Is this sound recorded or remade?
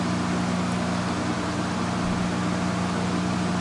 recorded